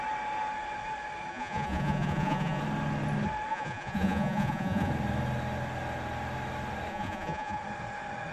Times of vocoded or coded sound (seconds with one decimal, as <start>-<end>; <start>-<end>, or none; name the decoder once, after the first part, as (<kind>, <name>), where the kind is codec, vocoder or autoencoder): 1.3-2.6 (vocoder, Vocos); 3.5-4.9; 6.9-7.6